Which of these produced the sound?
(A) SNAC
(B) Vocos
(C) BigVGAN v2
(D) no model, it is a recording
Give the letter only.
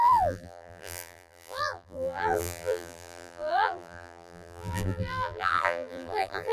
C